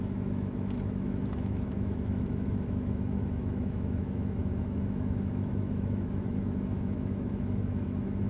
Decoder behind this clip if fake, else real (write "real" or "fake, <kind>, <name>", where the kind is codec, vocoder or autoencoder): fake, autoencoder, DAC-VAE